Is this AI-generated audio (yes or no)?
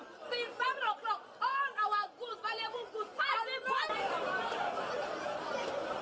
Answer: no